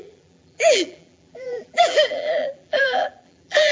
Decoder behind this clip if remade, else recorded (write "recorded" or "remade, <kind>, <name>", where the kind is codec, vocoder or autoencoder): remade, vocoder, BigVGAN v2